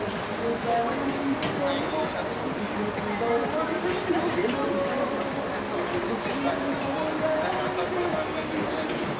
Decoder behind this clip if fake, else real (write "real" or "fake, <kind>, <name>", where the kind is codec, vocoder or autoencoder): real